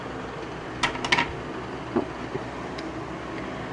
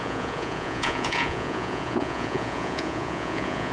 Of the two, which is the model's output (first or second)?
second